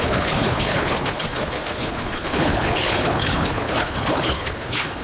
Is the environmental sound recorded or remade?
remade